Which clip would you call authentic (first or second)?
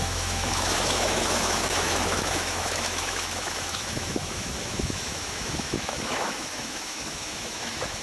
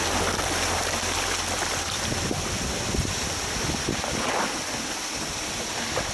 second